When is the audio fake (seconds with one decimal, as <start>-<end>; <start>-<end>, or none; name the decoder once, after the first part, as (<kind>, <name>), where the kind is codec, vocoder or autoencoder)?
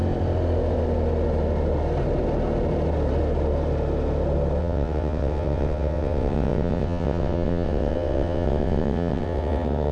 4.6-9.9 (vocoder, WaveNeXt)